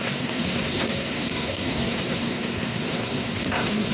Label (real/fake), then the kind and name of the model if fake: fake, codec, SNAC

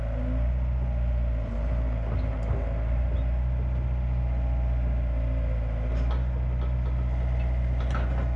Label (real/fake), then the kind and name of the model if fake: real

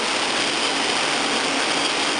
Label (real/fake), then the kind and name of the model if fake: real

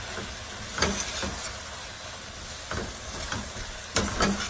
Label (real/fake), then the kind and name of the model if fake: real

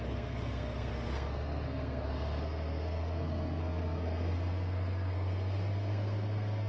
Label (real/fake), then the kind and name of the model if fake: fake, codec, SNAC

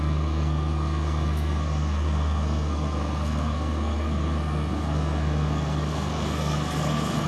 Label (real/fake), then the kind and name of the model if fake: fake, codec, SNAC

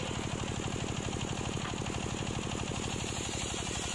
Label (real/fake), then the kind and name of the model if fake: real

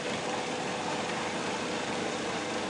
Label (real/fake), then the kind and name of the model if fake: real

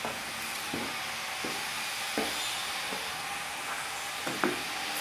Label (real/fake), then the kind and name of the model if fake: real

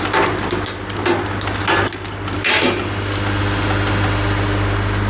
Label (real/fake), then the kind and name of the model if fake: real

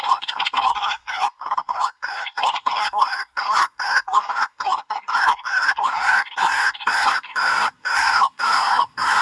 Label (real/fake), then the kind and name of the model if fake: fake, codec, SNAC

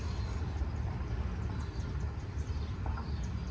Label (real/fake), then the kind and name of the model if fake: real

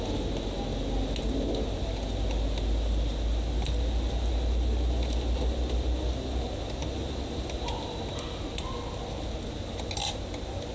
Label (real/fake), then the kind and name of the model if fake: real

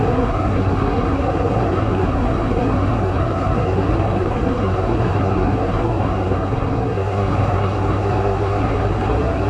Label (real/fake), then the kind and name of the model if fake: fake, codec, SNAC